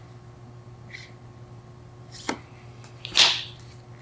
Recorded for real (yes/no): yes